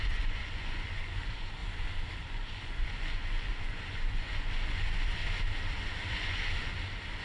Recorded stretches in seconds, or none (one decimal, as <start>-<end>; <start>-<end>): 1.6-2.2; 5.2-6.1; 6.7-7.2